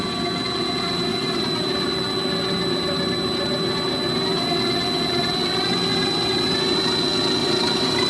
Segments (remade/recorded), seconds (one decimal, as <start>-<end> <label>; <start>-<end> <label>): 0.0-1.1 recorded; 1.1-1.9 remade; 1.9-7.4 recorded; 7.4-8.1 remade